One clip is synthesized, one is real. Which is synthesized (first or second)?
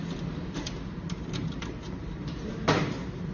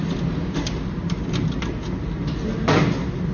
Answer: first